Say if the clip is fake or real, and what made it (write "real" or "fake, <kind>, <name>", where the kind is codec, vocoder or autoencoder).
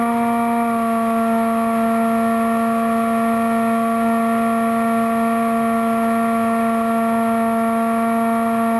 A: real